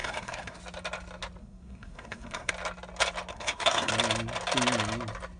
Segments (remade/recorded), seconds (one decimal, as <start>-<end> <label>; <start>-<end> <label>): 0.0-0.6 remade; 0.6-1.4 recorded; 1.4-2.5 remade; 2.5-3.3 recorded; 3.3-3.9 remade; 3.9-5.4 recorded